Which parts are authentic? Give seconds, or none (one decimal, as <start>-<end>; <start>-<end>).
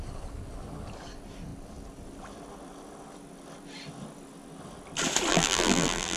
0.0-5.3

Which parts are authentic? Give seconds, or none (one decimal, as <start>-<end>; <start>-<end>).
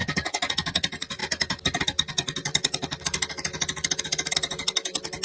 0.0-5.2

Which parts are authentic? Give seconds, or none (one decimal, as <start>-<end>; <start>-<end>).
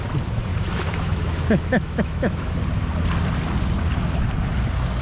0.0-0.5; 2.5-5.0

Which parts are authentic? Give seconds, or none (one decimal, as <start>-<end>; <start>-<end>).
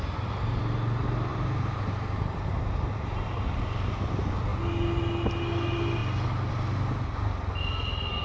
0.0-1.3; 3.4-8.2